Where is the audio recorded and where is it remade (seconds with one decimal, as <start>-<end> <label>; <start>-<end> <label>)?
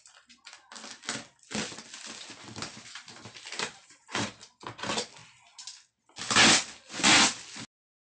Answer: 0.0-2.7 recorded; 2.7-4.3 remade; 4.3-8.1 recorded